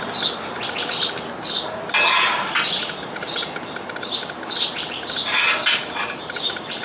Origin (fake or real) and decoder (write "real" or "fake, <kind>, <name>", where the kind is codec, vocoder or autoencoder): real